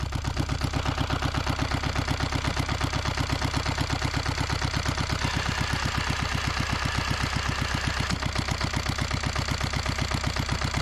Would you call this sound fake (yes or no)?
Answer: no